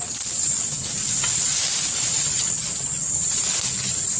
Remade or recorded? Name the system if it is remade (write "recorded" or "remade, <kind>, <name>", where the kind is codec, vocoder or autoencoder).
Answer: recorded